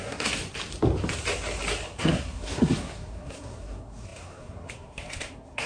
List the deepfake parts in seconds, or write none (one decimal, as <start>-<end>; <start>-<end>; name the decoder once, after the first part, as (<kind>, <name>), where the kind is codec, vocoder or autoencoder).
0.0-0.4 (codec, SNAC); 2.0-5.7